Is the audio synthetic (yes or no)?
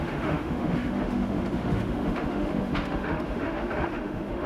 yes